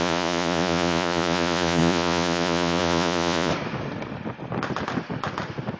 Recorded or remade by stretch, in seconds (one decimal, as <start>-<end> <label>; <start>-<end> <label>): 0.0-3.5 remade; 3.5-5.8 recorded